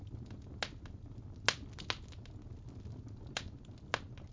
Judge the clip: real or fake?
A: real